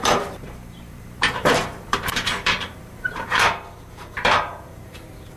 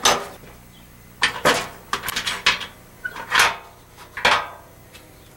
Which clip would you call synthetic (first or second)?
first